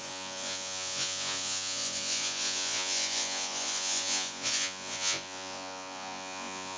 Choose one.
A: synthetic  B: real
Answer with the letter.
A